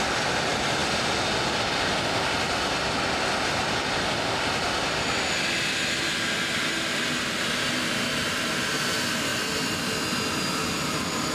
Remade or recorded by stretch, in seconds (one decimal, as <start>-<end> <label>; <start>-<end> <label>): 0.0-11.3 recorded